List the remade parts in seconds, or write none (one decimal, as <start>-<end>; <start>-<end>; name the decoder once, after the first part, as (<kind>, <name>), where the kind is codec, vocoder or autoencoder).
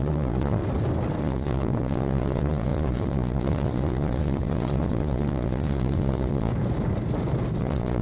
0.0-0.6 (vocoder, Vocos); 1.2-6.5; 7.6-8.0